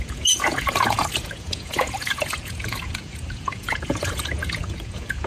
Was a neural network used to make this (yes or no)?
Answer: yes